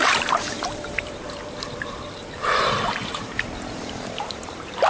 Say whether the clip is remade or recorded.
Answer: remade